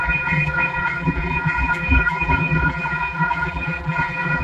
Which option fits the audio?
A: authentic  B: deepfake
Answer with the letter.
B